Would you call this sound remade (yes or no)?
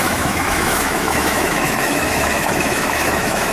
yes